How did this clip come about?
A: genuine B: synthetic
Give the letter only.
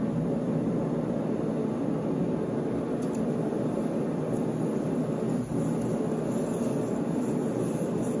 A